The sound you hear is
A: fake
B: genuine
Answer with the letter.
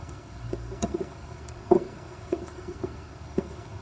A